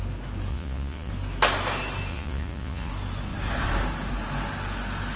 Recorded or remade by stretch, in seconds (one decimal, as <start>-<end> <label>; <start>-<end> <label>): 0.0-0.5 recorded; 0.5-1.1 remade; 1.1-2.1 recorded; 2.1-2.9 remade; 2.9-5.2 recorded